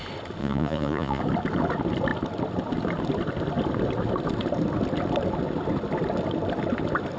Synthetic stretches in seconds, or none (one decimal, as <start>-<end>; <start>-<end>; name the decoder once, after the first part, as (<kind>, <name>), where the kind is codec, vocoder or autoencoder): 0.4-1.2 (vocoder, Vocos)